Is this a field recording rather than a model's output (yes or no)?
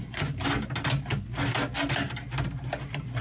yes